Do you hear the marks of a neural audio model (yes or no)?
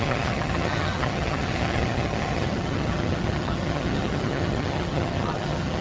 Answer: yes